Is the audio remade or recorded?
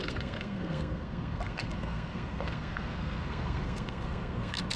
remade